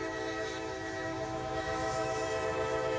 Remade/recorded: remade